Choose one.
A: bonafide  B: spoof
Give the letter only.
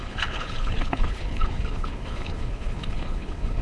B